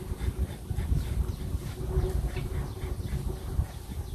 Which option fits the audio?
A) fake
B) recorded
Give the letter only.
B